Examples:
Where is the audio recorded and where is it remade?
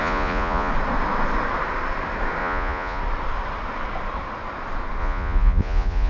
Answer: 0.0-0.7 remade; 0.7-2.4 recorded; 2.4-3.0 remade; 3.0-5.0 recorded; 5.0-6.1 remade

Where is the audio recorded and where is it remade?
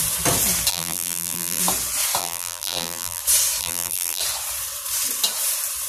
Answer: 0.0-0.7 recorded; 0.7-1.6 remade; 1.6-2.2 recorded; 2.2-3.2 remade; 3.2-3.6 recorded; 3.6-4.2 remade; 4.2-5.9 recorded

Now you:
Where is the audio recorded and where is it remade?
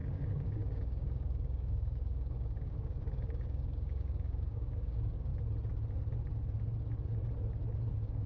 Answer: 0.0-5.3 remade; 5.3-7.9 recorded; 7.9-8.3 remade